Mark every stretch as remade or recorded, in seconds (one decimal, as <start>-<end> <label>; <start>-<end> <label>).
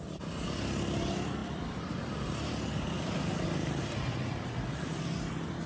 0.0-1.4 recorded; 1.4-2.5 remade; 2.5-5.7 recorded